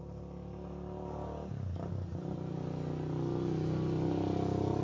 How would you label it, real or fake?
real